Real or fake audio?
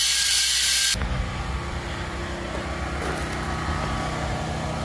real